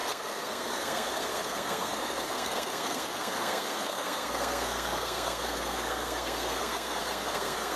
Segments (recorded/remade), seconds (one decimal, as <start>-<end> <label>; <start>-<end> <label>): 0.0-7.8 remade